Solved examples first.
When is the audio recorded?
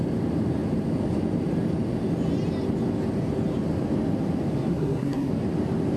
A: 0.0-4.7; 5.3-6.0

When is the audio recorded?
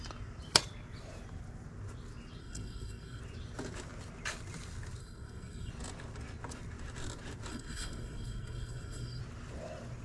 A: 0.0-2.4; 3.2-5.0; 5.7-7.5; 9.2-10.0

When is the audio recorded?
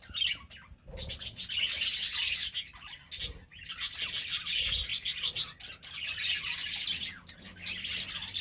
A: 0.0-8.4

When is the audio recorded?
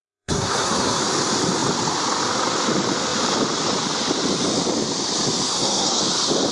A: 1.0-5.5; 6.0-6.5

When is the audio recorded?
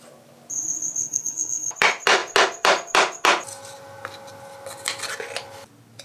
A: 0.0-1.0; 1.7-6.0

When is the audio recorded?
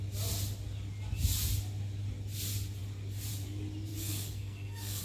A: 0.0-3.9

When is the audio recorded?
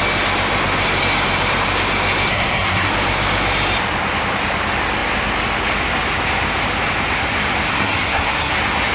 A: 0.0-2.3; 2.9-7.7; 8.5-8.9